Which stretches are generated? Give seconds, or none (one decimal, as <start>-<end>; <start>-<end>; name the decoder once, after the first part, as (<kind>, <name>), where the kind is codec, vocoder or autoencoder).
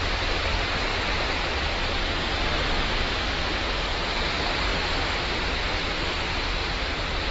0.9-2.1 (vocoder, BigVGAN v2)